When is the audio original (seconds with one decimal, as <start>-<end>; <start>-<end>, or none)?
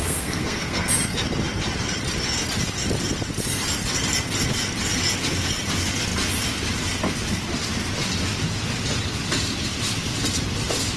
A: 0.9-11.0